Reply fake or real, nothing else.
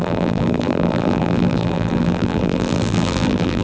fake